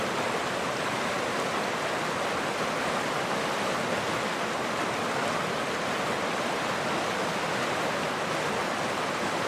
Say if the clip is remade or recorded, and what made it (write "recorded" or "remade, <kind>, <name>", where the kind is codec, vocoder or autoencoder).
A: recorded